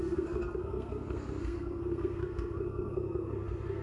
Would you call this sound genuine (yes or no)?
no